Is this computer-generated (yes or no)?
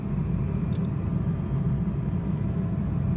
no